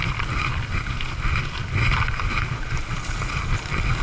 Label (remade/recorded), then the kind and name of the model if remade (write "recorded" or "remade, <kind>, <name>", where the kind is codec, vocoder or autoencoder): recorded